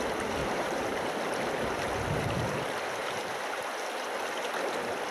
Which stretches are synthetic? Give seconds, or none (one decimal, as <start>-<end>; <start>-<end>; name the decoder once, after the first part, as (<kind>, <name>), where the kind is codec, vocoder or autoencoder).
0.4-1.1 (vocoder, BigVGAN v2); 3.0-3.6